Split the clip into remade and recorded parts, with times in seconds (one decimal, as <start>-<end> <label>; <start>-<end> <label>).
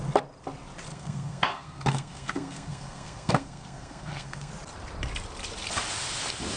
0.0-0.9 recorded; 0.9-4.5 remade; 4.5-6.6 recorded